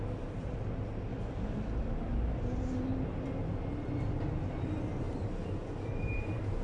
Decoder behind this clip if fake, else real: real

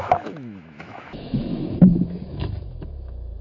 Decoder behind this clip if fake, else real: fake, autoencoder, DAC-VAE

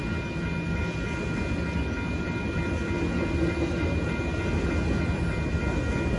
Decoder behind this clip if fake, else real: real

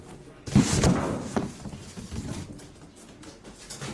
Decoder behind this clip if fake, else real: real